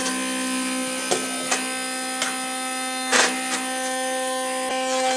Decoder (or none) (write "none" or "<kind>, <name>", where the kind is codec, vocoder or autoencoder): none